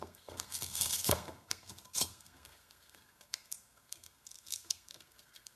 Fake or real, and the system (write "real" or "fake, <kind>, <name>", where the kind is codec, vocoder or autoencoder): fake, codec, SNAC